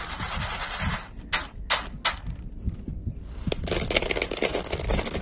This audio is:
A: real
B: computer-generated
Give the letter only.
A